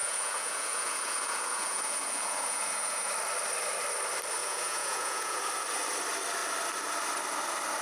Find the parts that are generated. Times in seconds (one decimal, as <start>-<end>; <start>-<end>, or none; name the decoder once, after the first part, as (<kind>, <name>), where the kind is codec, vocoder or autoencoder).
0.0-3.1 (vocoder, Vocos); 4.4-5.4